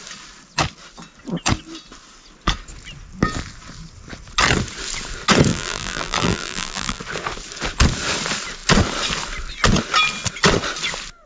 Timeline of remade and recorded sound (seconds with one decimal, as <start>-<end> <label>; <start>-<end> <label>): 0.0-5.5 recorded; 5.5-7.0 remade; 7.0-11.3 recorded